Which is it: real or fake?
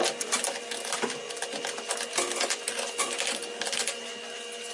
real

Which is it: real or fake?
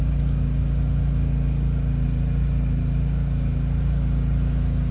real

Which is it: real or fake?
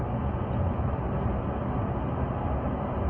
real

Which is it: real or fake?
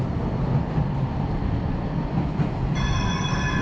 real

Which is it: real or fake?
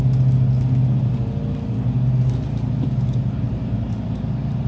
real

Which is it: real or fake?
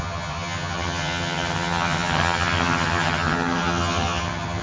fake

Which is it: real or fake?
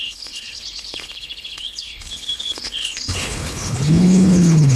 fake